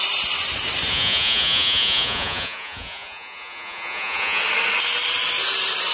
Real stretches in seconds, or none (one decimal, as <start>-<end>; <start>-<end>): 0.0-0.9; 4.4-5.9